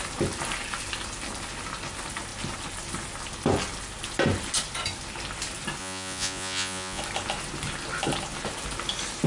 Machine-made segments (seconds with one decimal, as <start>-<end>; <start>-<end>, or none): 5.8-7.0